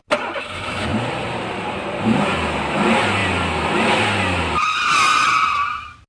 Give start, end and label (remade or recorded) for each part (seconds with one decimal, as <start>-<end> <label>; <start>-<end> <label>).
0.0-3.2 remade; 3.2-4.4 recorded; 4.4-6.1 remade